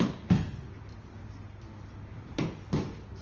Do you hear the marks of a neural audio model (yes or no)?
no